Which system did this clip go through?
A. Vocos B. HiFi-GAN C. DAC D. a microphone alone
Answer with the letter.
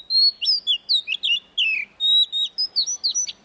D